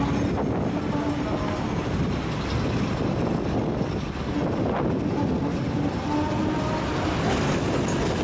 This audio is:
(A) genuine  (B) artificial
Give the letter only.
A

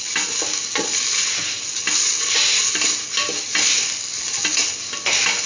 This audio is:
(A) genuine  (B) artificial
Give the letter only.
A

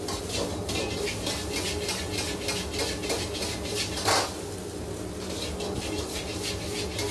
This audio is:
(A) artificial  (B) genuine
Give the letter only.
B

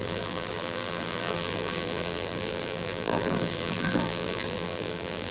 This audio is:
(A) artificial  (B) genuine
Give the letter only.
A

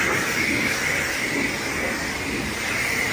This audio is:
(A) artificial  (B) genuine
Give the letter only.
B